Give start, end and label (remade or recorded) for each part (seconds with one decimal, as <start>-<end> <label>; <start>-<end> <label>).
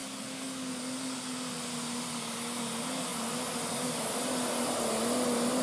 0.0-0.8 remade; 0.8-5.6 recorded